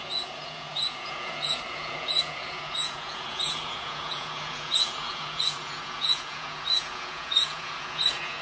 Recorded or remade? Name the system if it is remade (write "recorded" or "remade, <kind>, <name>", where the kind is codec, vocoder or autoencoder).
remade, vocoder, Vocos